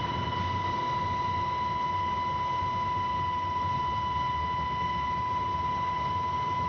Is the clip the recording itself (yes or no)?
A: yes